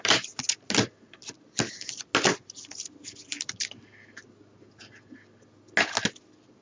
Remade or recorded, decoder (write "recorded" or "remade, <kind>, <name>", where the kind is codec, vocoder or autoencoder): recorded